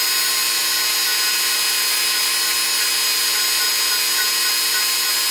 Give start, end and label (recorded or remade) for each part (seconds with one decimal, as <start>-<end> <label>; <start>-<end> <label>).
0.0-5.3 recorded